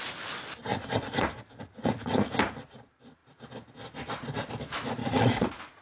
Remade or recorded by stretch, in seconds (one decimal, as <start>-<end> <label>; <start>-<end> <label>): 0.0-0.7 recorded; 0.7-2.4 remade; 2.4-5.0 recorded; 5.0-5.8 remade

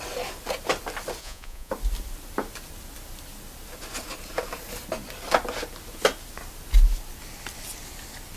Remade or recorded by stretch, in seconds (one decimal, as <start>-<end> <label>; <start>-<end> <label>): 0.0-1.2 recorded; 1.2-1.7 remade; 1.7-8.4 recorded

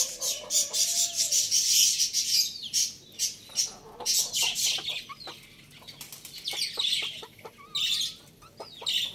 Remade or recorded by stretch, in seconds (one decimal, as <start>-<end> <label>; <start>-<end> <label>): 0.0-0.6 recorded; 0.6-1.2 remade; 1.2-9.1 recorded

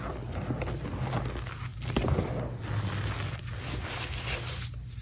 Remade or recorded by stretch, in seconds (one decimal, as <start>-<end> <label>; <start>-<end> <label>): 0.0-5.0 recorded

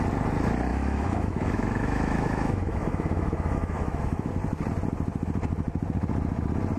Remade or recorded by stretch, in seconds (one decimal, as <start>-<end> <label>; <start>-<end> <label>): 0.0-0.7 recorded; 0.7-4.3 remade; 4.3-6.8 recorded

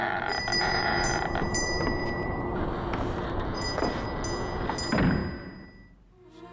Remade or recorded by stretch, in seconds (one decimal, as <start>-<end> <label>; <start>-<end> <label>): 0.0-3.9 remade; 3.9-6.5 recorded

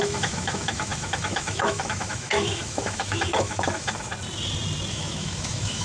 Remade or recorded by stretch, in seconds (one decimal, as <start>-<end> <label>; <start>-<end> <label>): 0.0-4.1 remade; 4.1-4.9 recorded; 4.9-5.8 remade

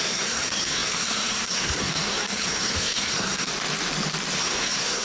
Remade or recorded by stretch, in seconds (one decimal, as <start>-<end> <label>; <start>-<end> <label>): 0.0-3.5 remade; 3.5-4.4 recorded; 4.4-5.0 remade